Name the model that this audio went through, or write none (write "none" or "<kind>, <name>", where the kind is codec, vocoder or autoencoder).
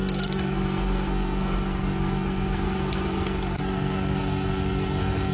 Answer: codec, SNAC